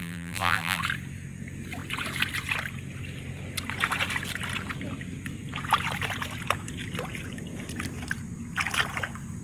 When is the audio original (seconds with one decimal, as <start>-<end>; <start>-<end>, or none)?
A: 0.8-9.4